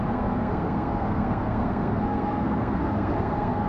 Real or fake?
fake